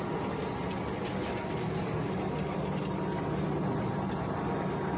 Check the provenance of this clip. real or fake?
real